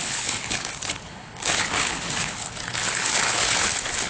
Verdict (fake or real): fake